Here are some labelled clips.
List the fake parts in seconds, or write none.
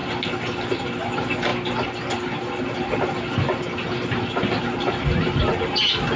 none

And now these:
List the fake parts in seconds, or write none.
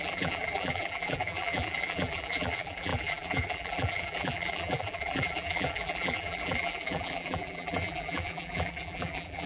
0.0-9.5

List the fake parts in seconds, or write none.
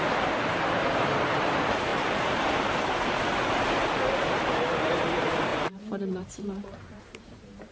0.0-7.7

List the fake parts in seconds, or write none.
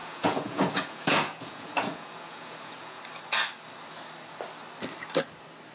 0.0-3.0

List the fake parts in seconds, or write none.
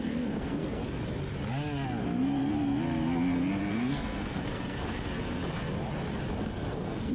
0.0-0.8; 2.0-2.4; 3.7-4.8; 6.4-7.1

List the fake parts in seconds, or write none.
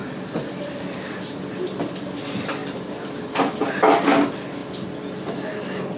0.0-1.5; 2.6-3.5